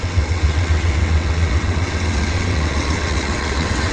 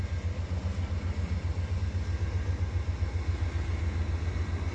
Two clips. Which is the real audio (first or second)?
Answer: second